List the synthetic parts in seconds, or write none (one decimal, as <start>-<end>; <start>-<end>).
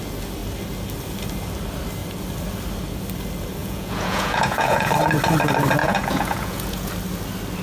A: 3.6-4.9; 5.8-6.9